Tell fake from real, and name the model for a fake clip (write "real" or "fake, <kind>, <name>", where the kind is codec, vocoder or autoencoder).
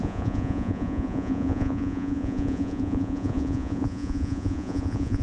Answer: fake, vocoder, Vocos